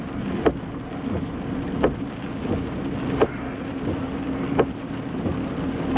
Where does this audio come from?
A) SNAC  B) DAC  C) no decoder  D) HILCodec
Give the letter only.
C